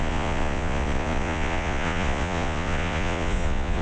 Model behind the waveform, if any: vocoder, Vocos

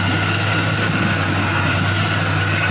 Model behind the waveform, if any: none